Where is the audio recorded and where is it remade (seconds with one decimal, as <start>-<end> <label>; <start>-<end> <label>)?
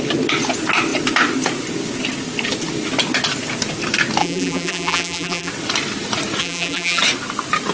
0.0-4.2 recorded; 4.2-5.5 remade; 5.5-6.4 recorded; 6.4-7.0 remade; 7.0-7.7 recorded